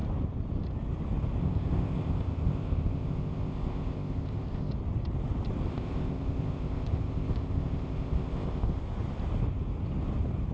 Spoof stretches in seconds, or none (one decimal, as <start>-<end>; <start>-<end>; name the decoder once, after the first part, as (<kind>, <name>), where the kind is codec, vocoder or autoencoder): 1.4-4.7 (codec, ZipCodec); 5.7-8.8